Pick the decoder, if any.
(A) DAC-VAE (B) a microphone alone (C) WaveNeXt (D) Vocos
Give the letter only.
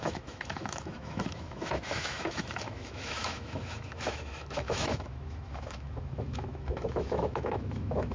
A